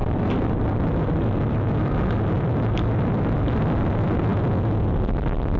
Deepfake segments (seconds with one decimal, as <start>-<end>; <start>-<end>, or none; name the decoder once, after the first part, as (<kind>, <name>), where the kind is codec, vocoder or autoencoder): 0.0-5.6 (vocoder, BigVGAN v2)